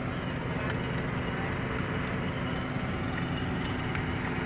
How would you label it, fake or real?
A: real